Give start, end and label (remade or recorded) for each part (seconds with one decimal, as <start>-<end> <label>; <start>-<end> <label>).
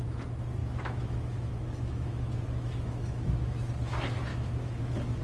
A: 0.0-0.6 recorded; 0.6-3.7 remade; 3.7-4.3 recorded; 4.3-5.2 remade